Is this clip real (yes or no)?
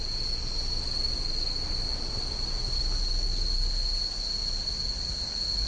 yes